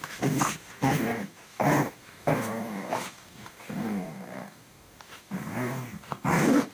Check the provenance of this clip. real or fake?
fake